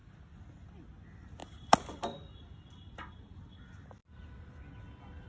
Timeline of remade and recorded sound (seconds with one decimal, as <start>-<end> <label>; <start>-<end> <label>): 0.0-5.3 recorded